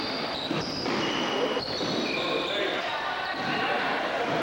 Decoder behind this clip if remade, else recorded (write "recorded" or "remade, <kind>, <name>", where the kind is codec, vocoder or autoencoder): remade, vocoder, BigVGAN v2